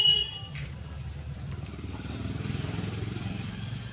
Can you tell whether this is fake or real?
fake